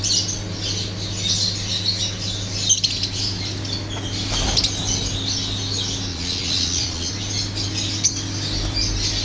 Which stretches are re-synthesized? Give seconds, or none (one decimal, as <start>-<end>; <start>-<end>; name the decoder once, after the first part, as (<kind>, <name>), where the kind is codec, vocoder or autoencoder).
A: 6.1-7.1 (vocoder, Vocos)